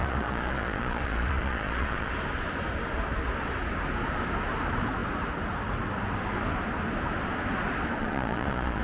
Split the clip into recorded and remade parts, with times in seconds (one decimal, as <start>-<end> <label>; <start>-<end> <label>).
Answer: 0.0-2.1 remade; 2.1-8.0 recorded; 8.0-8.8 remade